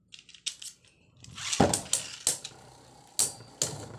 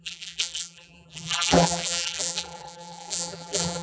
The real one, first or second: first